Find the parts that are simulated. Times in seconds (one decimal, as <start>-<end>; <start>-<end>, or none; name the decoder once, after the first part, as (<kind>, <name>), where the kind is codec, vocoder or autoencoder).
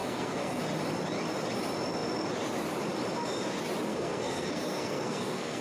0.0-0.6 (codec, SNAC); 3.9-5.6